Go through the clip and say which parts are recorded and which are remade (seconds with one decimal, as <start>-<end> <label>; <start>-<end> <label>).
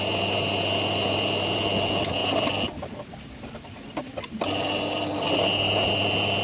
0.0-6.4 recorded